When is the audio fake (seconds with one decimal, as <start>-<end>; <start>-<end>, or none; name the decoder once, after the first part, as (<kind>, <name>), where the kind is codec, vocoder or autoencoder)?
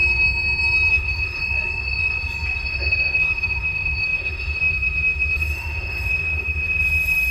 0.9-1.4 (autoencoder, DAC-VAE); 2.8-7.3